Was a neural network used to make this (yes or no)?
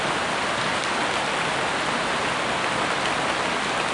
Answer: no